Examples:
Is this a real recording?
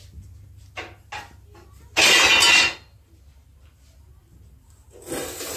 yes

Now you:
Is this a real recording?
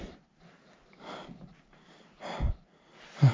yes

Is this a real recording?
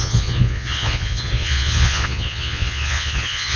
no